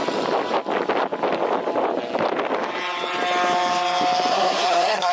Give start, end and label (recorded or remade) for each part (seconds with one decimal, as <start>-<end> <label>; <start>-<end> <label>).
0.0-4.3 recorded; 4.3-5.1 remade